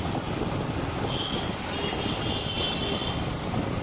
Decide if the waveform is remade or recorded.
recorded